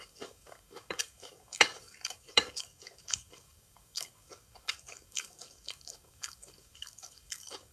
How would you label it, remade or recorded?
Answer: remade